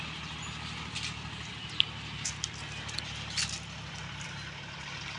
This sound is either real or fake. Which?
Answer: real